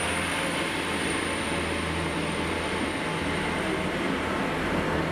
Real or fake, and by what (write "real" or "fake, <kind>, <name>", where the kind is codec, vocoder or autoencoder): real